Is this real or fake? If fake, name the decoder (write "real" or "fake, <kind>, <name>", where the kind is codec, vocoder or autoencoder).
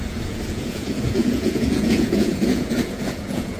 fake, vocoder, Vocos